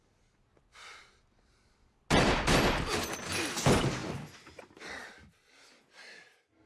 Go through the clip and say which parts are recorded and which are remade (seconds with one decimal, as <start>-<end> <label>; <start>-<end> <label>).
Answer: 0.0-6.7 recorded